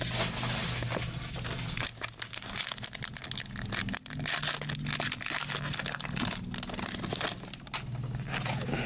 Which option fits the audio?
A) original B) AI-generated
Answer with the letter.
A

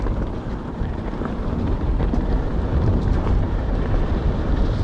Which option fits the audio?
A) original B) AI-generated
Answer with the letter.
B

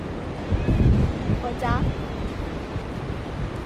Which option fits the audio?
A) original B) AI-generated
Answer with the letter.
A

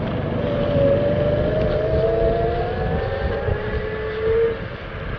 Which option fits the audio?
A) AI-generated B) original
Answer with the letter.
B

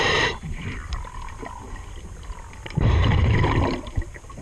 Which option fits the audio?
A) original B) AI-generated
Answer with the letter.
B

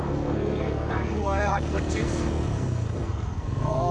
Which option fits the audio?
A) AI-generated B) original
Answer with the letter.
A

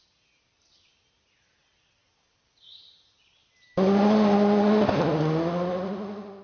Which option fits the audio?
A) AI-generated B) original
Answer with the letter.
B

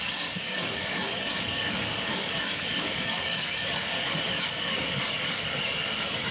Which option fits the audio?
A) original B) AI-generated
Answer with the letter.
B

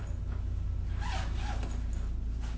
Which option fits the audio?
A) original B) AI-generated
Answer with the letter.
A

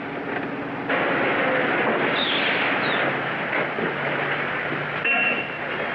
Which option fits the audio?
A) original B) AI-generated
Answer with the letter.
A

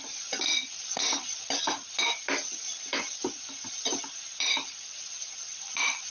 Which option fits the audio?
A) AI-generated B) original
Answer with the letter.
B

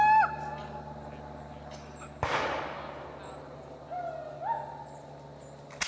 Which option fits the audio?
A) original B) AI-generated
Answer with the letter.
A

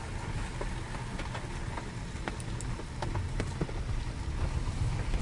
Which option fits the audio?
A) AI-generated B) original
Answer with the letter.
B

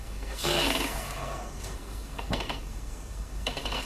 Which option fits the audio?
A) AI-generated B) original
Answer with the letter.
A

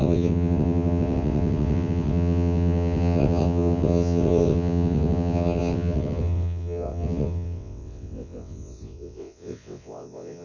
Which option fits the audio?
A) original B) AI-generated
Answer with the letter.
B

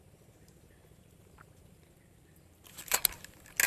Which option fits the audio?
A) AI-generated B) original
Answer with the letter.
B